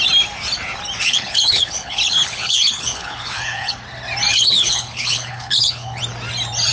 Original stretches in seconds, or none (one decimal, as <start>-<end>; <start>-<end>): 0.0-1.0; 3.7-4.3; 6.0-6.7